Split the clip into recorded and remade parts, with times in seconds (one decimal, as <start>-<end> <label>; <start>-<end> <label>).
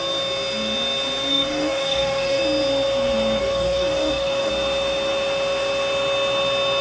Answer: 0.0-1.3 recorded; 1.3-2.4 remade; 2.4-3.4 recorded; 3.4-4.5 remade; 4.5-6.8 recorded